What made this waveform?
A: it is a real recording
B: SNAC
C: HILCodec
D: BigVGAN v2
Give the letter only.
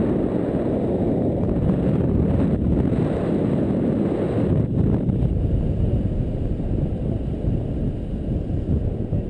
A